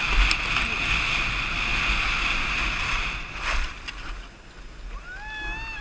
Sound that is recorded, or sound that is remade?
recorded